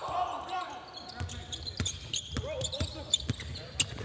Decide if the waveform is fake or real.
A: real